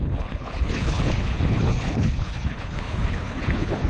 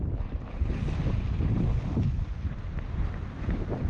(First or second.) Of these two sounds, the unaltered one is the second